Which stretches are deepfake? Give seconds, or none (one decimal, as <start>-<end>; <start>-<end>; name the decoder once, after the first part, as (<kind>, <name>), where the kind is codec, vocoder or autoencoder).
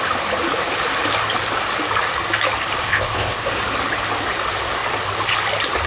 2.8-3.5 (codec, ZipCodec)